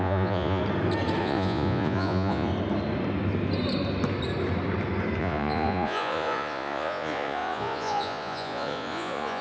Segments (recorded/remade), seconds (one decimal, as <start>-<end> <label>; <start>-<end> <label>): 0.0-0.6 remade; 0.6-1.2 recorded; 1.2-2.5 remade; 2.5-5.2 recorded; 5.2-9.4 remade